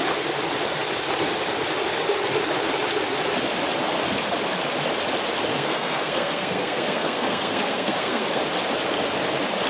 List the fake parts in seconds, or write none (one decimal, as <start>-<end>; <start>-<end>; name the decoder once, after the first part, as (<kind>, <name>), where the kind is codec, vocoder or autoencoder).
5.5-8.4 (codec, SNAC)